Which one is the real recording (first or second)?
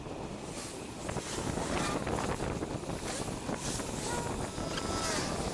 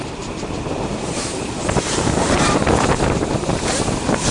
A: first